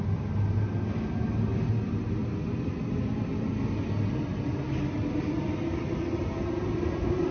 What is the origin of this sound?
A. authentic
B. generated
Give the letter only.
A